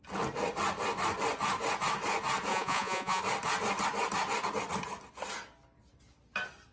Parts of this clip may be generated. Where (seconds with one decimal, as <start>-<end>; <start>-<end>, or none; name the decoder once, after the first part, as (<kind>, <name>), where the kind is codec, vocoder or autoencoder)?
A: 2.5-3.2 (vocoder, Vocos)